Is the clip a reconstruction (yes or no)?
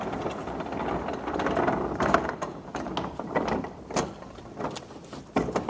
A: no